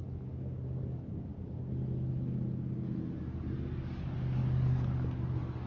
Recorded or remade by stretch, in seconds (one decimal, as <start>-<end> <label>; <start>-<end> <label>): 0.0-1.3 remade; 1.3-3.2 recorded; 3.2-5.7 remade